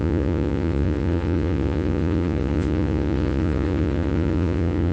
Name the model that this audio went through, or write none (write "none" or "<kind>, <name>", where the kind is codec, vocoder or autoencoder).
vocoder, Vocos